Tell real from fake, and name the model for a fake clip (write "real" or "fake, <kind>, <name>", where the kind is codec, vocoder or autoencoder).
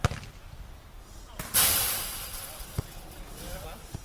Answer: real